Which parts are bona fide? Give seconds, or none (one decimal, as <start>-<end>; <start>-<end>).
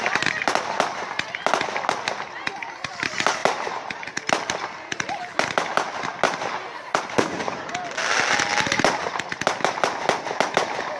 0.0-11.0